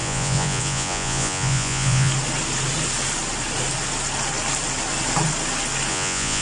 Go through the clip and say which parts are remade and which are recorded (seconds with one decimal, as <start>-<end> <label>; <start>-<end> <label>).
0.0-2.1 remade; 2.1-5.9 recorded; 5.9-6.4 remade